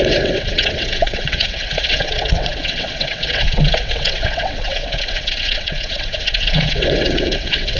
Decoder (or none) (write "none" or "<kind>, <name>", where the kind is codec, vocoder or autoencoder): vocoder, WaveNeXt